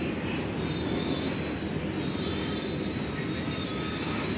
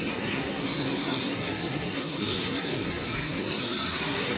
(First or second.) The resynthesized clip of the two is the second